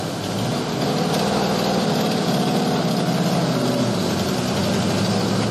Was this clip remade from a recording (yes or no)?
no